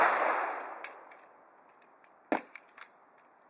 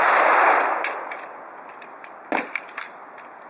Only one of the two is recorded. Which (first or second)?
first